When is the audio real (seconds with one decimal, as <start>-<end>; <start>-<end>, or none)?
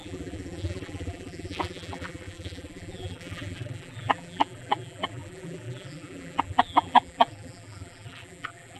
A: none